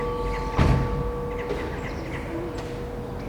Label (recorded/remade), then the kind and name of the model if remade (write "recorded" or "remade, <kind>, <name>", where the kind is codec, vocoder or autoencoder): recorded